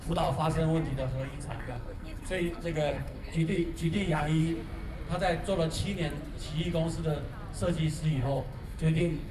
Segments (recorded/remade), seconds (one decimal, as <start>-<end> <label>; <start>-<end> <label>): 0.0-0.6 remade; 0.6-1.3 recorded; 1.3-4.4 remade; 4.4-8.0 recorded; 8.0-9.3 remade